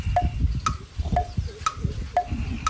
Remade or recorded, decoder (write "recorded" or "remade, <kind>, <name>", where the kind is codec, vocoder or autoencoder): recorded